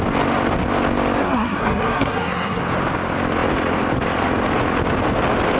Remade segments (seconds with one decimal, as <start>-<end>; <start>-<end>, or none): 1.2-2.6